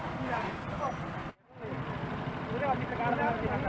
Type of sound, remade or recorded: recorded